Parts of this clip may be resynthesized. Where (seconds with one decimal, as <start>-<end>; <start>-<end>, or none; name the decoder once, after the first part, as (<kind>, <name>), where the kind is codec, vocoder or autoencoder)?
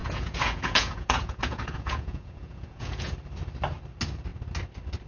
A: 0.0-3.1 (vocoder, Vocos)